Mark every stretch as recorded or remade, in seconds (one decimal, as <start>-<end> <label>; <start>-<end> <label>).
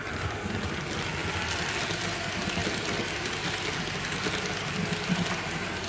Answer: 0.0-5.9 recorded